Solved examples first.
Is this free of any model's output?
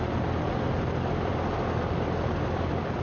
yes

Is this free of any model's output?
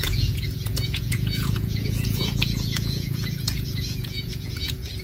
no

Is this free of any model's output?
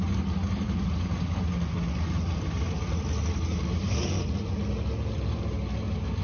yes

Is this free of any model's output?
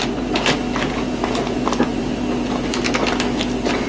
yes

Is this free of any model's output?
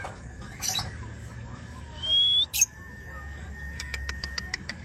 no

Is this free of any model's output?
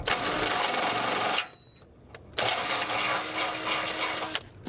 yes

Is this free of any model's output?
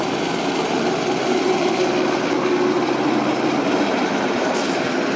yes